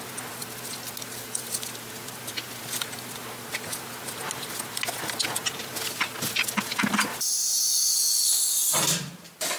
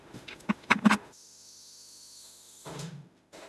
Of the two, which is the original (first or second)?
first